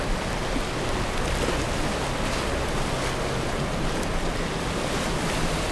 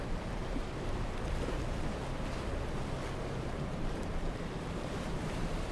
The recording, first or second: first